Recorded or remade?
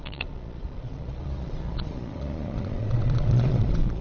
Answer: remade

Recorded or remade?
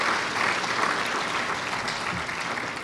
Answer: recorded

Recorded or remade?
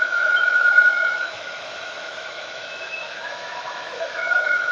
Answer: remade